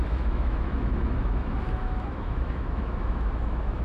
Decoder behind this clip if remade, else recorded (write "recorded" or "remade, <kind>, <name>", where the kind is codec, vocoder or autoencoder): remade, autoencoder, DAC-VAE